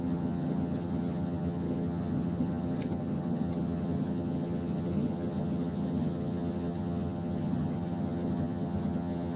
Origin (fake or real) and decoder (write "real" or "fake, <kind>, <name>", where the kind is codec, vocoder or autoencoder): fake, vocoder, HiFi-GAN